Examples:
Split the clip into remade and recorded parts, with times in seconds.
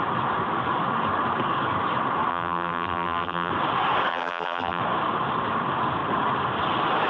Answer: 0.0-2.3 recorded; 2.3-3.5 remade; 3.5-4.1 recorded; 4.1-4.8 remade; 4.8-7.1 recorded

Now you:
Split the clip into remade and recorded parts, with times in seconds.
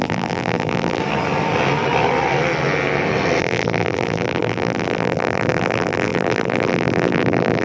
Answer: 0.0-1.0 remade; 1.0-3.4 recorded; 3.4-7.6 remade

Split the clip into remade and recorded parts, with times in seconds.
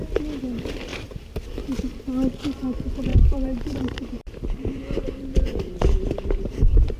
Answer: 0.0-0.9 recorded; 0.9-2.0 remade; 2.0-3.1 recorded; 3.1-7.0 remade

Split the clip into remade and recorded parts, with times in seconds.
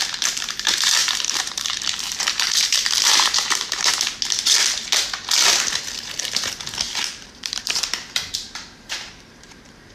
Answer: 0.0-3.9 remade; 3.9-7.1 recorded; 7.1-9.9 remade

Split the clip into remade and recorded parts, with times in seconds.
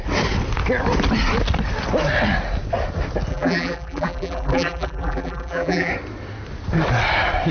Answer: 0.0-3.3 recorded; 3.3-5.9 remade; 5.9-7.5 recorded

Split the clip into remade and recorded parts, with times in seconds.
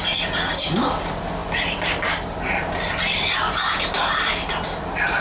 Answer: 0.0-0.6 recorded; 0.6-5.2 remade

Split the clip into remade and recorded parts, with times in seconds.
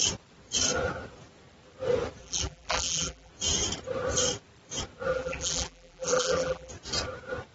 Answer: 0.0-2.2 recorded; 2.2-3.3 remade; 3.3-5.1 recorded; 5.1-6.7 remade; 6.7-7.5 recorded